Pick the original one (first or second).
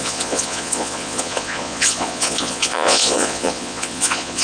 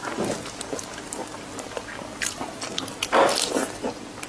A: second